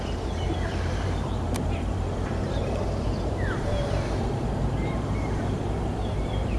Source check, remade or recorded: remade